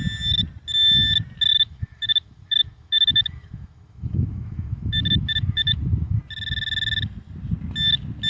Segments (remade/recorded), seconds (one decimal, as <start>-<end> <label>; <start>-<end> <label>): 0.0-1.5 recorded; 1.5-6.2 remade; 6.2-8.3 recorded